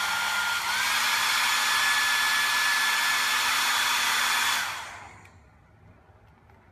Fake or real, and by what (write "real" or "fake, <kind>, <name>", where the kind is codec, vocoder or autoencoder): real